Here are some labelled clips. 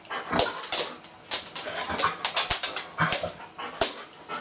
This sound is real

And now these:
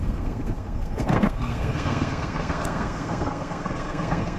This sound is fake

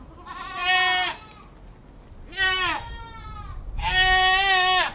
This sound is real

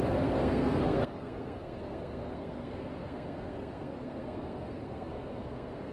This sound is fake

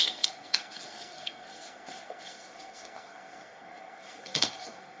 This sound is fake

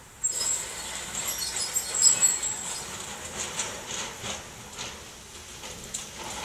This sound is real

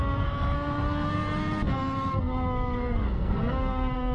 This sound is fake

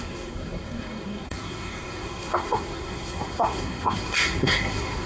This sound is fake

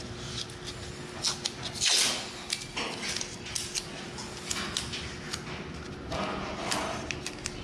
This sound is real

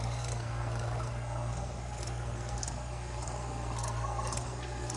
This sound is fake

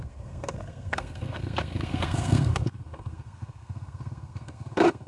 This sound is fake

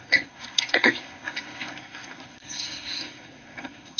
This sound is fake